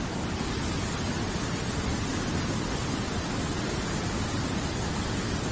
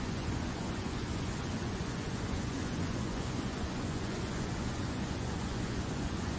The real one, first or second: first